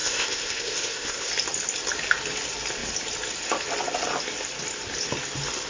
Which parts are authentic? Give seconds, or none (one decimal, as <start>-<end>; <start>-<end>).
1.3-5.7